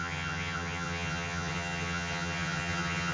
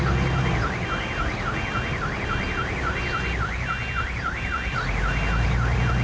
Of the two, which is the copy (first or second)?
first